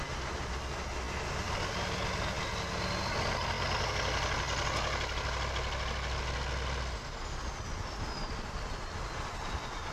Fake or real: real